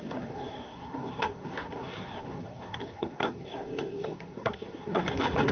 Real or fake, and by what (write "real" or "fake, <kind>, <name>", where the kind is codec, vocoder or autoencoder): fake, codec, SNAC